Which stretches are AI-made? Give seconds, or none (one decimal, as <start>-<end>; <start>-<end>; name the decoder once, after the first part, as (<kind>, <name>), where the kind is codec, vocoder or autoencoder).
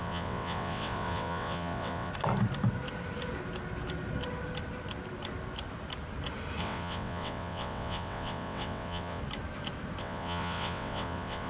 0.0-2.1 (vocoder, WaveNeXt); 6.6-9.2; 10.0-11.5